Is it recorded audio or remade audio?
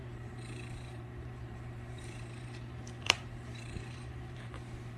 remade